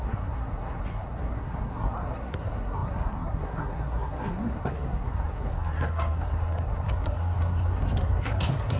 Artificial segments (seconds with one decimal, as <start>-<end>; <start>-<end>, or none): 0.0-8.8